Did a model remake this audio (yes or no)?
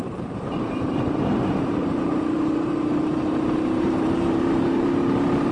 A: yes